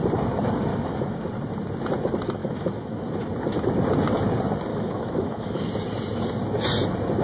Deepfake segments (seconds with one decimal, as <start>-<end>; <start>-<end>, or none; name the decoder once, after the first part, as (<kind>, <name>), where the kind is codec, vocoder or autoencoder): 0.7-1.3 (autoencoder, DAC-VAE); 2.4-3.2; 4.7-5.7